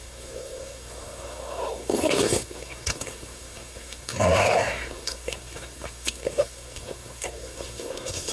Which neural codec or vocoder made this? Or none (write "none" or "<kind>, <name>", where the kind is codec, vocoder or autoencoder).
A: codec, SNAC